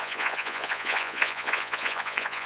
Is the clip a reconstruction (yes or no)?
yes